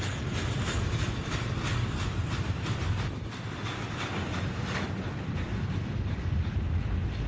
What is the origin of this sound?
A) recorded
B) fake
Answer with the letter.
B